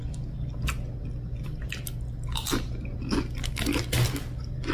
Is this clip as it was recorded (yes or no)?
yes